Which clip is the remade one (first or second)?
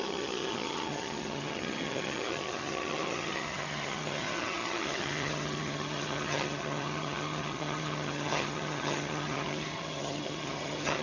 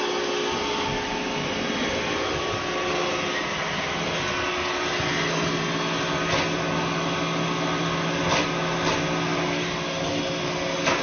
first